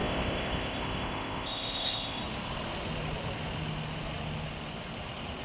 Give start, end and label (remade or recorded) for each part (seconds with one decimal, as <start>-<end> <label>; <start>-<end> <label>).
0.0-2.2 remade; 2.2-5.4 recorded